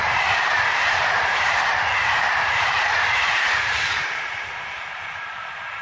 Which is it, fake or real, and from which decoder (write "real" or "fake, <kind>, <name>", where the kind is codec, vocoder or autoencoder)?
fake, vocoder, BigVGAN v2